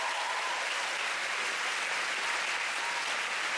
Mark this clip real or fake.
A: real